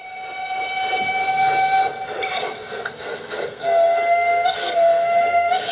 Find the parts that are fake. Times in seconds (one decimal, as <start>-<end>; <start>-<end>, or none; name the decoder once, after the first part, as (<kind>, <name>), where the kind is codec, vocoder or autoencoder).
2.4-5.7 (codec, SNAC)